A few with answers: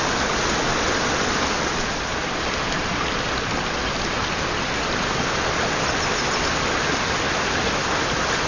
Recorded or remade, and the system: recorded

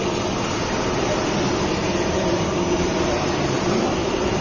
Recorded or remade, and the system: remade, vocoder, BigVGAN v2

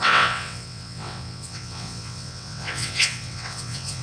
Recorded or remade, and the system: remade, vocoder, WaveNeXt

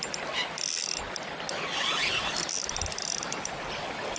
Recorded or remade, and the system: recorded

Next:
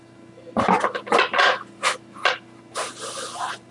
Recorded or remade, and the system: recorded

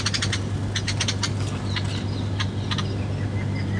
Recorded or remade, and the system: recorded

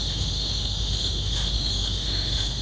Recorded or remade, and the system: remade, autoencoder, DAC-VAE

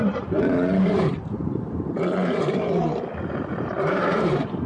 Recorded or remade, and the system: remade, vocoder, BigVGAN v2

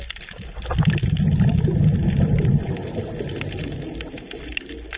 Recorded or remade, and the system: recorded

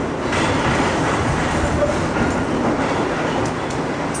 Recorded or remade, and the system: recorded